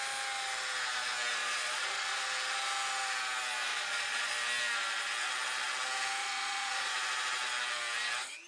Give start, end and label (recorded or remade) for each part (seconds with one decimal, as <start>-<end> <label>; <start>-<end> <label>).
0.0-1.4 recorded; 1.4-2.2 remade; 2.2-3.7 recorded; 3.7-4.3 remade; 4.3-6.2 recorded; 6.2-6.9 remade; 6.9-8.5 recorded